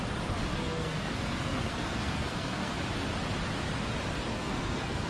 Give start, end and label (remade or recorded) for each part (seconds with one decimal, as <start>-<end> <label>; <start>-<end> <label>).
0.0-0.5 recorded; 0.5-2.7 remade; 2.7-4.3 recorded; 4.3-5.1 remade